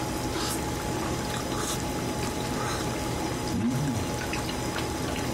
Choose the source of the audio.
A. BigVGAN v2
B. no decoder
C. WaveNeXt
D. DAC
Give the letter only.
B